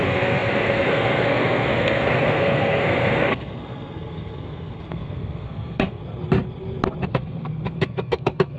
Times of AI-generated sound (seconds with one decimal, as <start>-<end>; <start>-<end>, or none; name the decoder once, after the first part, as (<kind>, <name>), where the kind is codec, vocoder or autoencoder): 0.0-6.0 (codec, SNAC); 7.1-8.6